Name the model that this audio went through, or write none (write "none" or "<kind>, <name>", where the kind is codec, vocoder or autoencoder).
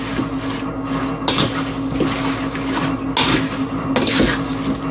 none